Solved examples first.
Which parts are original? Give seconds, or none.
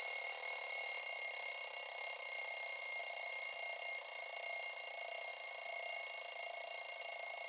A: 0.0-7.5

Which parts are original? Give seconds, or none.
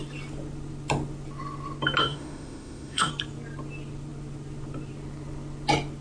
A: 0.0-2.0; 3.1-6.0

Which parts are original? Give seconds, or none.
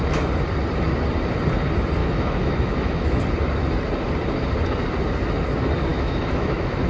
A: 0.0-2.0; 3.2-5.9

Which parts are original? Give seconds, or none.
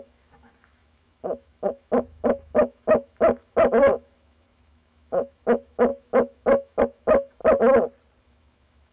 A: 7.4-8.2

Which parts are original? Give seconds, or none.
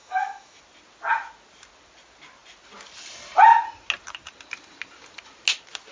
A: 0.6-5.9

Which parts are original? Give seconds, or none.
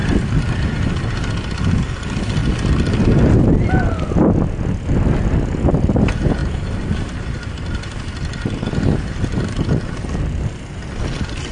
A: 0.0-11.5